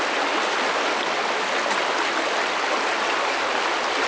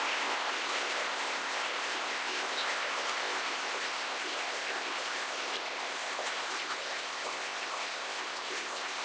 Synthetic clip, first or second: second